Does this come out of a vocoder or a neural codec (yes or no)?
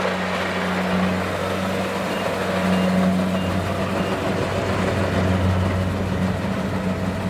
no